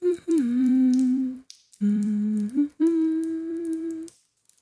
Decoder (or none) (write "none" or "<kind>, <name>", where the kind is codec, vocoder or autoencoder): vocoder, BigVGAN v2